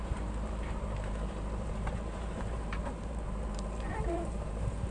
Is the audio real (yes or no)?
no